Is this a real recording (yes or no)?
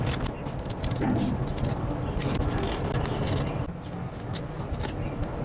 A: yes